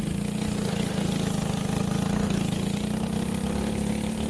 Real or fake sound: real